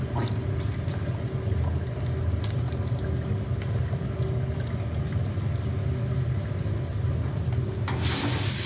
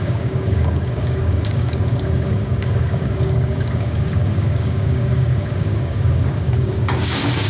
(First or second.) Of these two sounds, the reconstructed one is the second